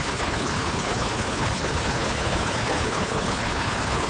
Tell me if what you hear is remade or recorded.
remade